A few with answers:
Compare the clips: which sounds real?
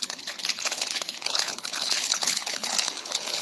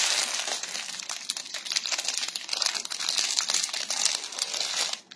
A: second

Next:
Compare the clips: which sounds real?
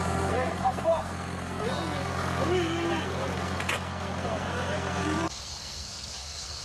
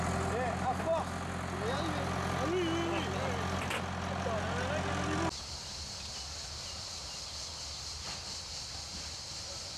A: second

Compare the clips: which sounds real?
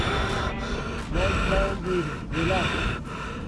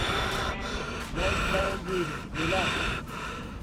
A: first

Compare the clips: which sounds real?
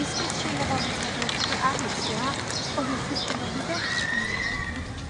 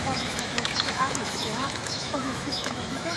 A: first